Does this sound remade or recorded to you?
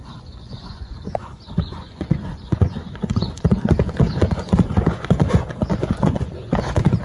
remade